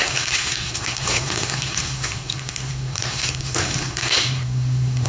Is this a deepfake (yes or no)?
yes